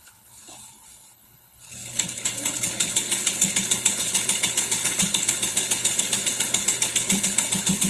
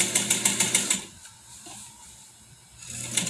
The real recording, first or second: second